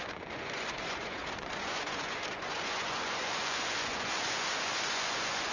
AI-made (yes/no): yes